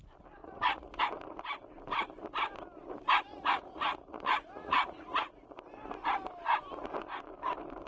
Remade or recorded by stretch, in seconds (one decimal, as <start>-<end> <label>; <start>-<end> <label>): 0.0-0.4 recorded; 0.4-1.0 remade; 1.0-3.3 recorded; 3.3-5.5 remade; 5.5-7.9 recorded